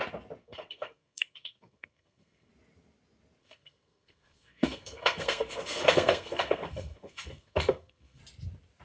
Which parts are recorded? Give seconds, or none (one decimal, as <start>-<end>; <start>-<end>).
0.0-0.4; 2.5-3.4; 8.2-8.8